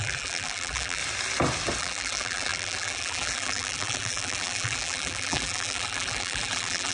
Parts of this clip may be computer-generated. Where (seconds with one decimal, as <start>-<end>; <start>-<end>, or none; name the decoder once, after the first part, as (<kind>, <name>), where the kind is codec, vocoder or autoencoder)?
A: 0.0-1.0 (vocoder, BigVGAN v2); 1.8-6.9